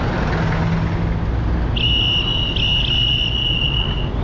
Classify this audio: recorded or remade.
recorded